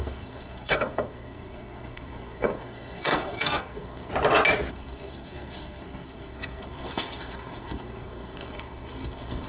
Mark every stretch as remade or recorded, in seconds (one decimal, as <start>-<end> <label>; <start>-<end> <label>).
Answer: 0.0-4.1 remade; 4.1-4.7 recorded; 4.7-9.5 remade